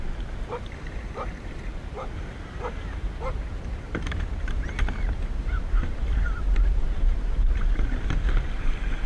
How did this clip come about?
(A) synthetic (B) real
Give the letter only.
A